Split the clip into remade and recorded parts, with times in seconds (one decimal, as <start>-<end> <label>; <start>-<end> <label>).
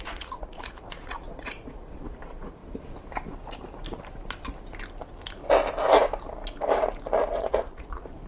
0.0-2.6 remade; 2.6-7.4 recorded; 7.4-8.3 remade